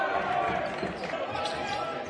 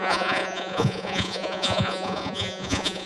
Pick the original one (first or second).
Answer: first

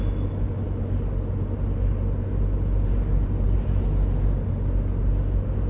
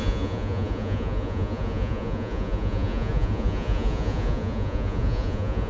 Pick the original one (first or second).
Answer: first